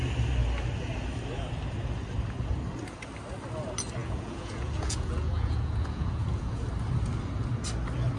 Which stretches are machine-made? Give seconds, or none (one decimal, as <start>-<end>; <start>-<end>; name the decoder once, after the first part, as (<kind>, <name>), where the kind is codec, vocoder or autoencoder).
4.0-6.6 (vocoder, Vocos)